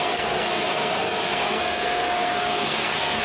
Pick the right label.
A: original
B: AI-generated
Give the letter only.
B